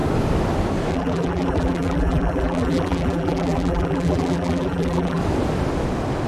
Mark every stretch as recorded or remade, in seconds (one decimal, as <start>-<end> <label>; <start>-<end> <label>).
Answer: 0.0-0.9 recorded; 0.9-5.2 remade; 5.2-6.3 recorded